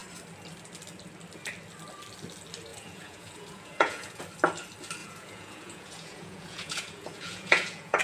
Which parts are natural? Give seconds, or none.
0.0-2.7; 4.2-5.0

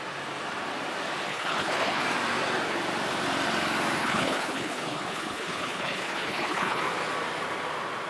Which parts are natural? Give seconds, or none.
0.0-1.3; 2.0-4.0; 6.8-8.1

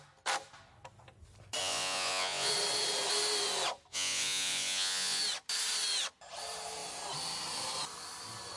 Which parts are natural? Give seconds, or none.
0.0-1.6; 2.5-3.9; 5.2-8.6